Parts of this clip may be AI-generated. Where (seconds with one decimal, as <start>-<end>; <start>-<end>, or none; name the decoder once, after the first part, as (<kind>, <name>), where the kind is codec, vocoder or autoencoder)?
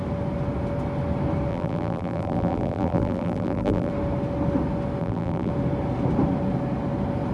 1.5-3.9 (vocoder, BigVGAN v2); 5.0-5.5